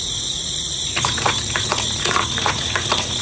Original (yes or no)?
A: no